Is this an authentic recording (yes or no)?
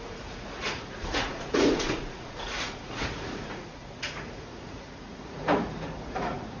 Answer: no